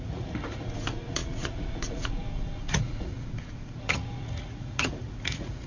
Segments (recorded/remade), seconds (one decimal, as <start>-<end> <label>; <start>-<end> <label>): 0.0-5.7 remade